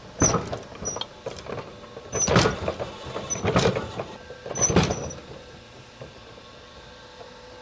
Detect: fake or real real